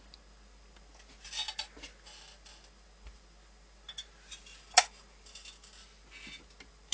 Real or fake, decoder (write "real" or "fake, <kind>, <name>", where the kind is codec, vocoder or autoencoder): real